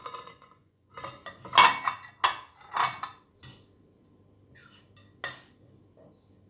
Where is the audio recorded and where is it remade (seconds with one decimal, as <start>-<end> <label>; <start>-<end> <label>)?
0.0-0.9 remade; 0.9-6.5 recorded